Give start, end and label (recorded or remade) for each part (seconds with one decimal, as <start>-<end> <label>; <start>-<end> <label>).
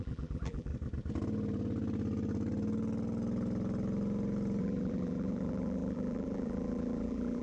0.0-0.7 remade; 0.7-4.6 recorded; 4.6-7.4 remade